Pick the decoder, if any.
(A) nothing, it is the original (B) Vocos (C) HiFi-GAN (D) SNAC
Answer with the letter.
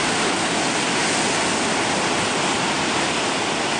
A